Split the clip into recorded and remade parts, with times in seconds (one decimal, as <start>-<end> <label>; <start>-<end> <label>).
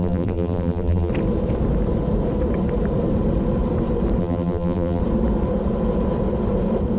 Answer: 0.0-1.1 remade; 1.1-4.2 recorded; 4.2-5.0 remade; 5.0-7.0 recorded